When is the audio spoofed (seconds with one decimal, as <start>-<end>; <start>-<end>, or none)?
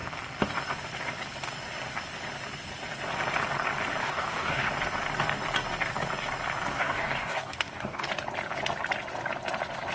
4.0-4.7; 6.7-8.1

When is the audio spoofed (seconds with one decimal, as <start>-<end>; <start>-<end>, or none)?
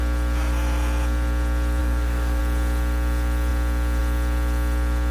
1.8-2.4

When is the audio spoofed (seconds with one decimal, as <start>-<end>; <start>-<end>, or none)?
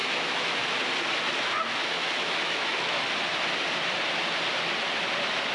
0.0-0.7; 1.8-3.0